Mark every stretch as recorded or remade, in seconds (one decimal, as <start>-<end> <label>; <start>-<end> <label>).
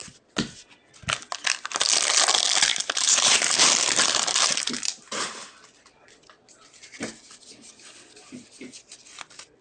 0.0-2.7 recorded; 2.7-6.1 remade; 6.1-9.6 recorded